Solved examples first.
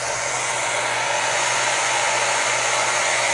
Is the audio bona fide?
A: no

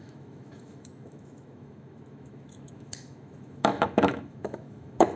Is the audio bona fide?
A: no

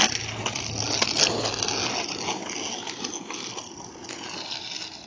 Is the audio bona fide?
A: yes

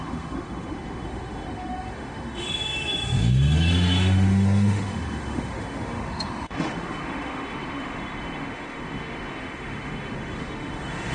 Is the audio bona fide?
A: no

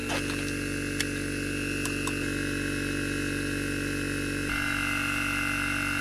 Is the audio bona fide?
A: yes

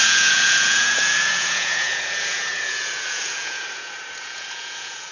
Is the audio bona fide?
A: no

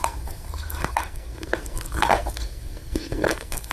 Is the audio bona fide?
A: no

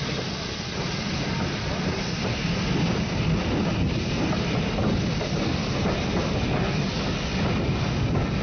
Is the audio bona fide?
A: yes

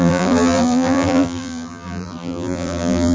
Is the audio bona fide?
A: no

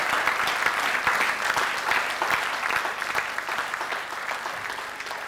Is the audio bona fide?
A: yes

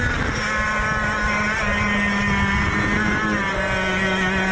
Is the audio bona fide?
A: yes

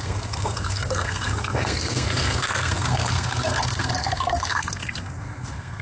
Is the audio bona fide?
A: no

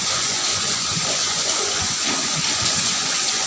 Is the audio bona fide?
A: no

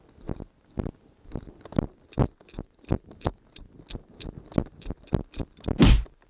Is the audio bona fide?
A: yes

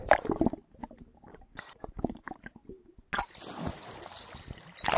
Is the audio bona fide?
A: yes